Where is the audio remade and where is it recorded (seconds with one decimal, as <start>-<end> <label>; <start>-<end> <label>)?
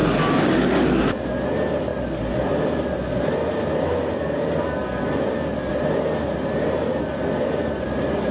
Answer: 0.0-1.3 remade; 1.3-6.5 recorded; 6.5-7.0 remade; 7.0-8.3 recorded